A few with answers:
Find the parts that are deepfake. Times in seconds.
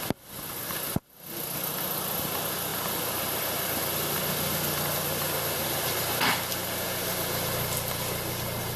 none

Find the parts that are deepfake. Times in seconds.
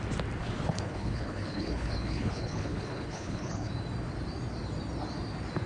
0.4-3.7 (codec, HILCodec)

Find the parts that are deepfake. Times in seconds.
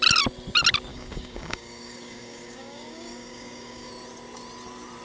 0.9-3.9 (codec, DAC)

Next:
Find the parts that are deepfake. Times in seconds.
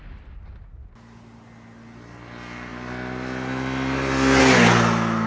none